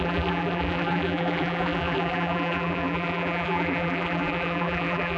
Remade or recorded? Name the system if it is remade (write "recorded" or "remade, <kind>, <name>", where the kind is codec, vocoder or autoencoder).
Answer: remade, vocoder, BigVGAN v2